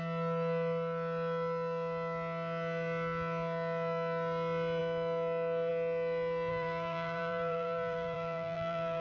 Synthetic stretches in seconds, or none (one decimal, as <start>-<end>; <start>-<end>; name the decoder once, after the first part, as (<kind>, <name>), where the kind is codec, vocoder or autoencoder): 6.5-9.0 (vocoder, BigVGAN v2)